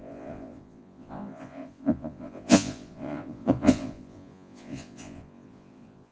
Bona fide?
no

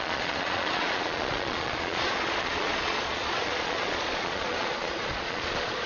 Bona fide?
no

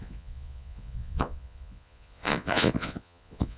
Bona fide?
no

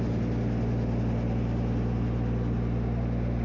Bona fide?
yes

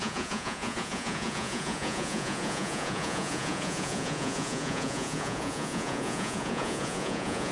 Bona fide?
no